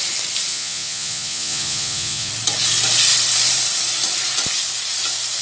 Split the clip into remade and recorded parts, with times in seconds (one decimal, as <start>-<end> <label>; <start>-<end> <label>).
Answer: 0.0-0.5 recorded; 0.5-2.3 remade; 2.3-5.4 recorded